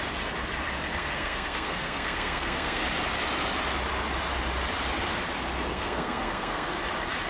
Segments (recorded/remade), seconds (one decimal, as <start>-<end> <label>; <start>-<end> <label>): 0.0-0.9 recorded; 0.9-2.8 remade; 2.8-5.7 recorded; 5.7-6.7 remade; 6.7-7.3 recorded